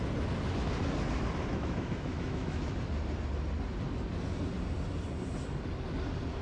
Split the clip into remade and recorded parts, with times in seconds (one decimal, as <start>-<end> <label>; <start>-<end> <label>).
0.0-1.5 recorded; 1.5-2.7 remade; 2.7-6.4 recorded